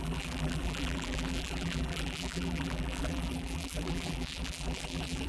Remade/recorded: remade